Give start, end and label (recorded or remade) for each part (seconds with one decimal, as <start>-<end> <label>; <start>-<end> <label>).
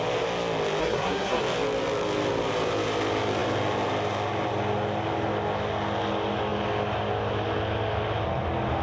0.0-0.8 recorded; 0.8-1.4 remade; 1.4-8.8 recorded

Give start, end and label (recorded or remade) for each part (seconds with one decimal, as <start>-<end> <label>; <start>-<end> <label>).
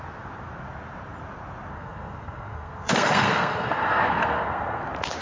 0.0-1.7 recorded; 1.7-4.8 remade; 4.8-5.2 recorded